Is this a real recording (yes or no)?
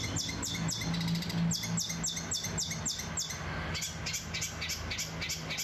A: yes